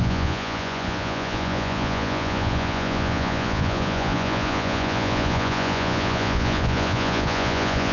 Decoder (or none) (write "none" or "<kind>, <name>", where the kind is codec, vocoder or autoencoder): vocoder, Vocos